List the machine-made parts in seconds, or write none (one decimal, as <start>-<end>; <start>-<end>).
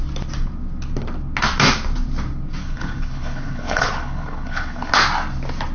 2.6-4.9